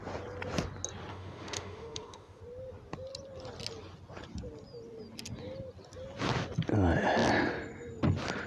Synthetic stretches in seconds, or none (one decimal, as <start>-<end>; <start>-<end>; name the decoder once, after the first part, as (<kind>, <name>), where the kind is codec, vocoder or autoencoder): 1.1-2.4 (autoencoder, DAC-VAE)